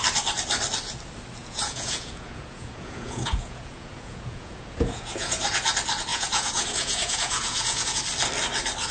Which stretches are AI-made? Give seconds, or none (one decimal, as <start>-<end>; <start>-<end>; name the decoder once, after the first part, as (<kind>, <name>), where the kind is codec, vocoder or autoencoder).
1.4-5.4 (vocoder, Vocos); 6.1-8.0